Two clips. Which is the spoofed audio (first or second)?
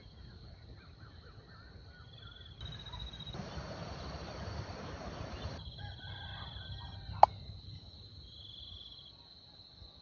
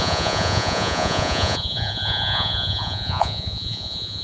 second